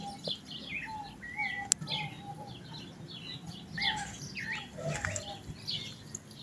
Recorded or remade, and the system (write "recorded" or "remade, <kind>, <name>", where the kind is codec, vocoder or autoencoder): recorded